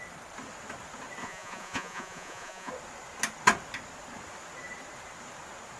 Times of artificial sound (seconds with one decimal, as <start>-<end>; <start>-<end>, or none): 1.2-2.7

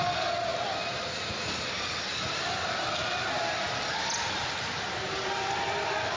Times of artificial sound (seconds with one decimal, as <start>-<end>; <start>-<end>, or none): none

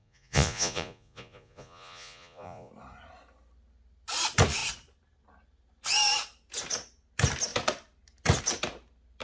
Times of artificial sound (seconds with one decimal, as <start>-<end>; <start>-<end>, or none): 0.0-2.7

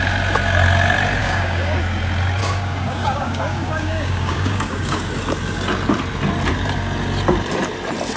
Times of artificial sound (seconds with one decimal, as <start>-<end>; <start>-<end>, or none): 1.2-1.8; 2.4-5.1

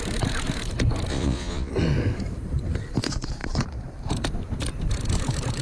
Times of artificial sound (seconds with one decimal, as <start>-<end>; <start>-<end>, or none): 1.1-1.7

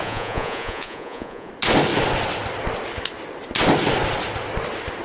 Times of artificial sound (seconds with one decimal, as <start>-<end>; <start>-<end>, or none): 0.0-1.5

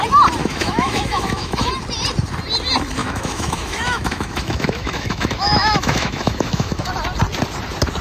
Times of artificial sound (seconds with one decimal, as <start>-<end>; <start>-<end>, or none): 0.4-1.7; 3.0-6.9